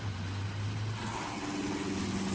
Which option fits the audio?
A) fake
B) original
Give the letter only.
B